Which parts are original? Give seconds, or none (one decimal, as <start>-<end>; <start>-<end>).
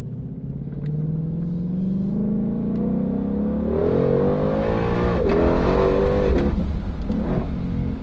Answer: 0.0-8.0